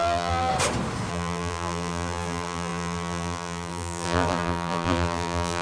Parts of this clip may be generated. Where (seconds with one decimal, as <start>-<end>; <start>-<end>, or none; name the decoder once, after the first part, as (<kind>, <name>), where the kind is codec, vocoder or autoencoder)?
0.0-0.5 (vocoder, BigVGAN v2); 1.1-5.6

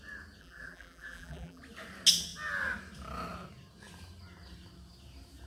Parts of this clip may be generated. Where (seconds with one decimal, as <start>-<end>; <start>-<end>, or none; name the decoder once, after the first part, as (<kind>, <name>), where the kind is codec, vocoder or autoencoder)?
0.4-1.6 (vocoder, BigVGAN v2)

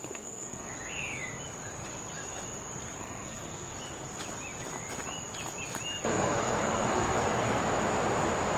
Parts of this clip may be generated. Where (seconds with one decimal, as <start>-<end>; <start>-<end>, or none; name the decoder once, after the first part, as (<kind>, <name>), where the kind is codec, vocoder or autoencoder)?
0.0-0.7 (codec, SNAC); 3.0-3.7; 6.0-7.6

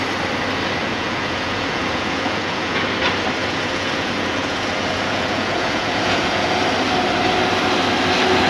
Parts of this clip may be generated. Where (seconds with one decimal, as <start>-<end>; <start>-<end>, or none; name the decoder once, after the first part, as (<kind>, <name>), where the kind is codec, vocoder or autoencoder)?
0.8-2.8 (vocoder, Vocos); 3.4-6.6

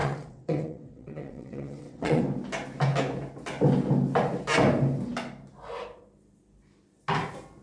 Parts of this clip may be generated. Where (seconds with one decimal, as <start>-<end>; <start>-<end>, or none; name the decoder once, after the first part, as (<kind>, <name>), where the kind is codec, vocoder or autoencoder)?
0.0-2.2 (vocoder, WaveNeXt)

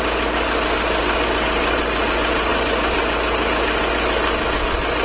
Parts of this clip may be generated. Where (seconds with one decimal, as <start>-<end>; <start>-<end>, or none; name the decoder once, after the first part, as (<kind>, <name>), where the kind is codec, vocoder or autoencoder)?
none

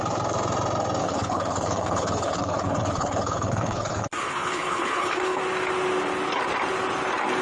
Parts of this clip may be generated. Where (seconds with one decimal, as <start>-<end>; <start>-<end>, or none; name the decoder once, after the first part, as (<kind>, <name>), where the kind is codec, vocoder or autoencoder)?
1.0-5.4 (codec, HILCodec)